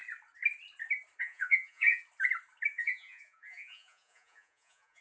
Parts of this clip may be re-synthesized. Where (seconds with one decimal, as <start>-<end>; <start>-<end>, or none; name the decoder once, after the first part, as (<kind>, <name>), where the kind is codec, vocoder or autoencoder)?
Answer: 1.2-2.0 (vocoder, Vocos); 2.7-5.0